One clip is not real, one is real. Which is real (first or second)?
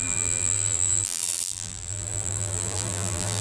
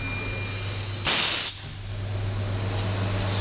second